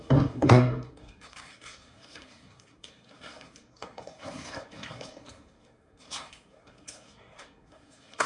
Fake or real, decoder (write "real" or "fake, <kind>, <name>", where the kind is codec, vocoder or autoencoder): fake, codec, SNAC